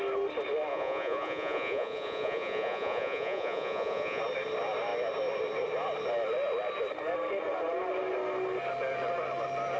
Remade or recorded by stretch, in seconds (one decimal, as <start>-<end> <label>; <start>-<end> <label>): 0.0-0.7 recorded; 0.7-4.2 remade; 4.2-9.8 recorded